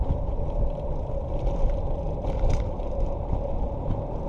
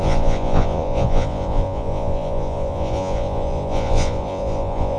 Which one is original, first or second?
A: first